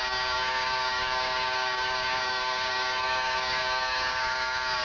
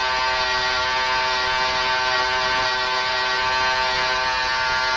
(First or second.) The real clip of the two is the second